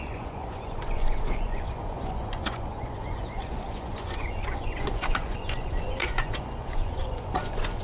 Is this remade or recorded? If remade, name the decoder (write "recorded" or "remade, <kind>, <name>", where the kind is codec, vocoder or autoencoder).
remade, vocoder, Vocos